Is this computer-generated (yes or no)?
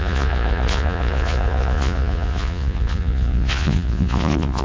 yes